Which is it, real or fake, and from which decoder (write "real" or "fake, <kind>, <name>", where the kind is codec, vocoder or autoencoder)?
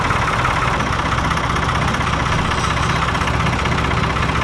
real